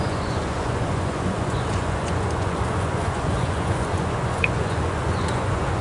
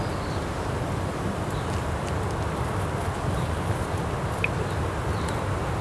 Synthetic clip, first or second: first